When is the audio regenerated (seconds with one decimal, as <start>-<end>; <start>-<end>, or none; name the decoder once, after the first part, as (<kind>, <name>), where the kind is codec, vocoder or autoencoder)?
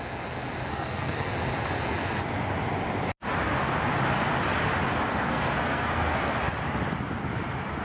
0.7-1.3 (codec, SNAC); 5.1-6.3